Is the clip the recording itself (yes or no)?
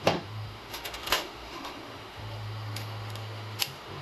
no